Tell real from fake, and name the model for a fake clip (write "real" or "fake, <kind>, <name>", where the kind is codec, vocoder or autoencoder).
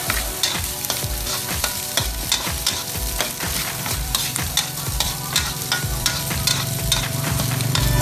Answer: fake, vocoder, BigVGAN v2